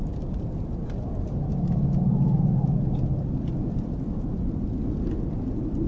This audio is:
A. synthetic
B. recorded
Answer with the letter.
B